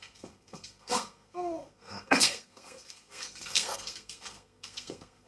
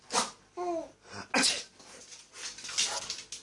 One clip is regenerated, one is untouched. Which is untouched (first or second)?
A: second